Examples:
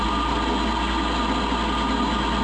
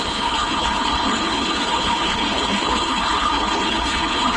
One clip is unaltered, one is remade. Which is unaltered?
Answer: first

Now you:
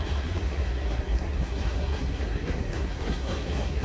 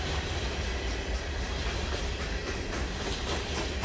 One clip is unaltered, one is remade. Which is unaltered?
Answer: second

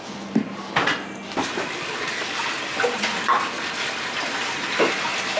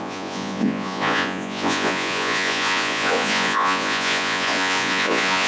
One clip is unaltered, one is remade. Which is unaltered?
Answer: first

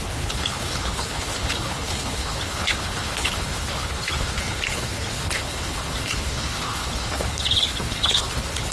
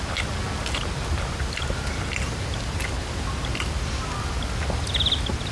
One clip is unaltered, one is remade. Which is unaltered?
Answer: second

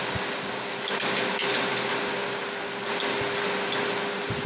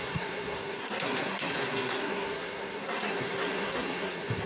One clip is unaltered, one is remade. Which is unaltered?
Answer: first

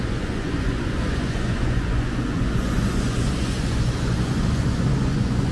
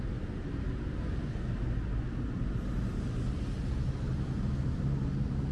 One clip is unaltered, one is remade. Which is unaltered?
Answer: second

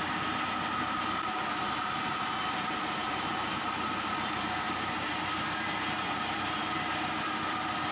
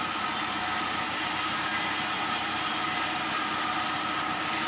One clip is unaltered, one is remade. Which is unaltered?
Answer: second